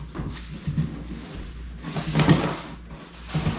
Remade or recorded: recorded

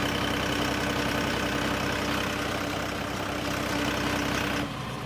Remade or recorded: recorded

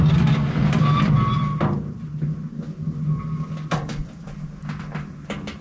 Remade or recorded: recorded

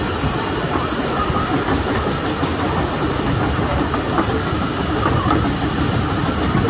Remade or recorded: recorded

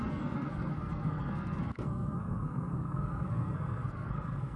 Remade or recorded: remade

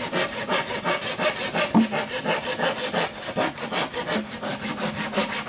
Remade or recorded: recorded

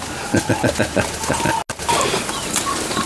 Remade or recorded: recorded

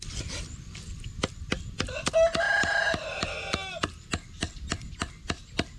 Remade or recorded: recorded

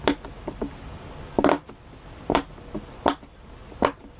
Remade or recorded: recorded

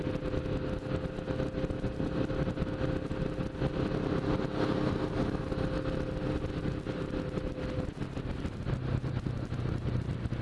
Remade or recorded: recorded